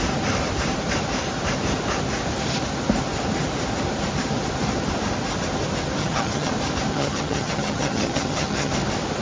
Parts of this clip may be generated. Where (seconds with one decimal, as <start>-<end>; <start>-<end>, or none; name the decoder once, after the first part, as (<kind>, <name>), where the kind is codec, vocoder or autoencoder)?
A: 6.0-6.5 (vocoder, HiFi-GAN); 6.9-8.7